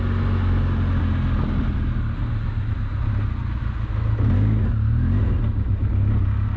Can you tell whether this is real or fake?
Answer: real